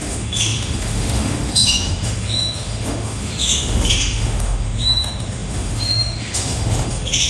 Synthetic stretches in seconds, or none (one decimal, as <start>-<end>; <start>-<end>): 0.0-7.3